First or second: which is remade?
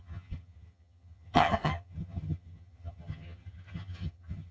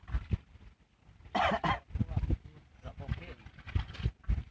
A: first